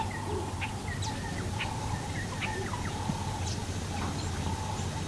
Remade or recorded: recorded